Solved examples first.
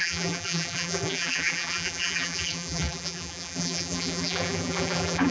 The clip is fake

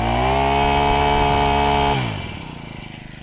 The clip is real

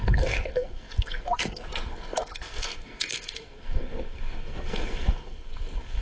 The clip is fake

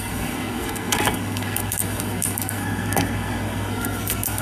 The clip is fake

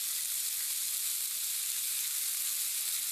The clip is real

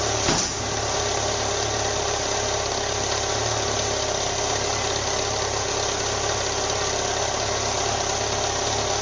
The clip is real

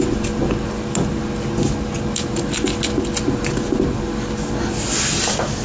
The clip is real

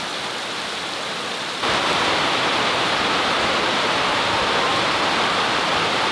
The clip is fake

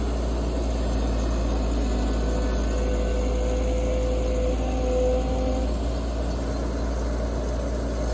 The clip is real